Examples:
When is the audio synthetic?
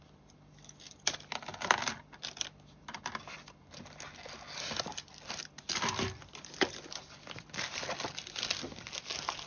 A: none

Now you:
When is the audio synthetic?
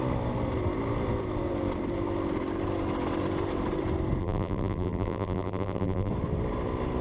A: 4.2-6.1 (vocoder, BigVGAN v2)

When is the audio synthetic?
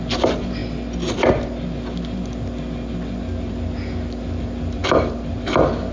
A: 4.8-5.4 (vocoder, BigVGAN v2)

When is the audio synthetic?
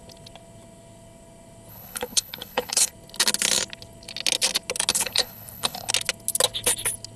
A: 1.7-2.9 (codec, HILCodec); 4.9-5.9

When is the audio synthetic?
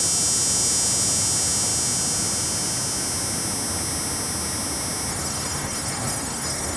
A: 5.1-6.8 (codec, SNAC)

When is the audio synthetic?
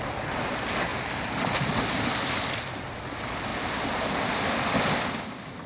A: none